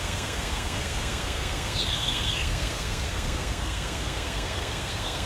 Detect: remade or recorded remade